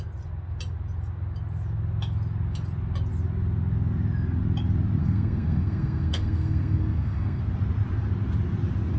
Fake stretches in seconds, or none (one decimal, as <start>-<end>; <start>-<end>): 5.0-7.4